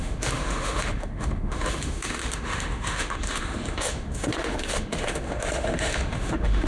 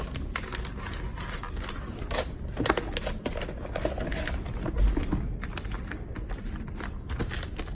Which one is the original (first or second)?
second